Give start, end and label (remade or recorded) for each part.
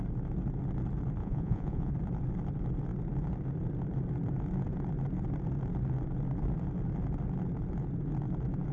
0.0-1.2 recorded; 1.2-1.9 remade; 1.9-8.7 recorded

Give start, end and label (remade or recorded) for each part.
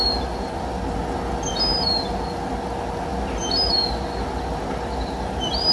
0.0-5.7 recorded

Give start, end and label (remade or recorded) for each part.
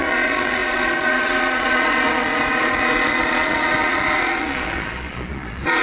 0.0-5.8 remade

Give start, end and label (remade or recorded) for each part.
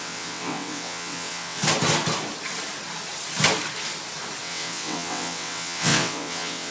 0.0-1.6 remade; 1.6-4.4 recorded; 4.4-6.7 remade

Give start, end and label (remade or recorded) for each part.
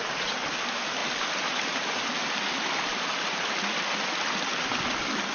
0.0-5.3 recorded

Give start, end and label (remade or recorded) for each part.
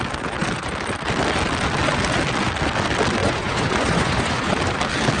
0.0-3.2 recorded; 3.2-4.5 remade; 4.5-5.2 recorded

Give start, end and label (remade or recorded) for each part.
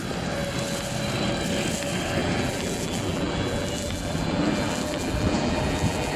0.0-2.2 recorded; 2.2-6.2 remade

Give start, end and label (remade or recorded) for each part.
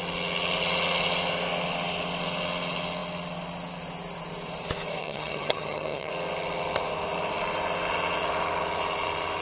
0.0-5.0 recorded; 5.0-6.1 remade; 6.1-9.4 recorded